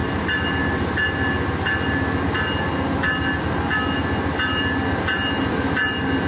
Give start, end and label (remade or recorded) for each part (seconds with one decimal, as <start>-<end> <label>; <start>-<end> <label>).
0.0-6.3 recorded